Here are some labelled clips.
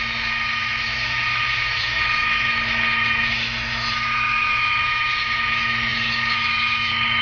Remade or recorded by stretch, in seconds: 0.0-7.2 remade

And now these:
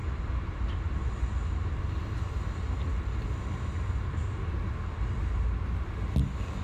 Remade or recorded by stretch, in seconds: 0.0-0.6 remade; 0.6-6.6 recorded

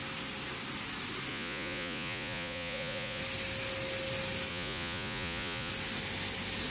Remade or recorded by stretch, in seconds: 0.0-1.3 recorded; 1.3-3.2 remade; 3.2-4.5 recorded; 4.5-5.7 remade; 5.7-6.7 recorded

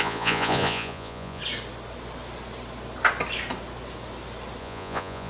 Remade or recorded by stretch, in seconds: 0.0-1.4 remade; 1.4-4.6 recorded; 4.6-5.3 remade